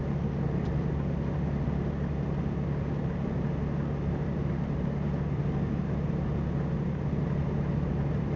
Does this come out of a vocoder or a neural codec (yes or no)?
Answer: no